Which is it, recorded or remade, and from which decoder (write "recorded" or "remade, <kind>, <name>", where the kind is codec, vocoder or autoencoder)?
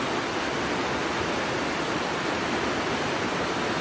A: recorded